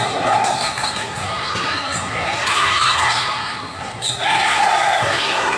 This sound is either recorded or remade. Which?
remade